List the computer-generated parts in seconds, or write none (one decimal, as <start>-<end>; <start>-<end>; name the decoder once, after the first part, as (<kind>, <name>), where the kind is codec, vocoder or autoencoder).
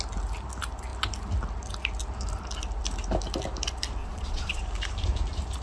4.0-4.6 (vocoder, Vocos)